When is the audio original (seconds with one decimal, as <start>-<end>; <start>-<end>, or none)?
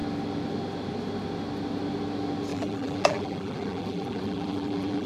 0.0-2.5